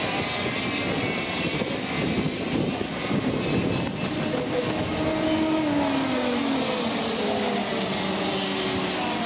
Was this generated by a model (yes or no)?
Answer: no